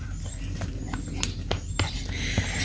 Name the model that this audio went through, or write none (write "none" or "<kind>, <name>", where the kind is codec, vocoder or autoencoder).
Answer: none